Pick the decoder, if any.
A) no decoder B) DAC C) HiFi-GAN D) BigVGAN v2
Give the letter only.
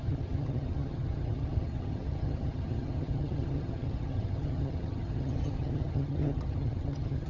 C